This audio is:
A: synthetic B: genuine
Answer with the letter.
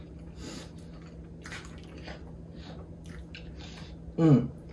B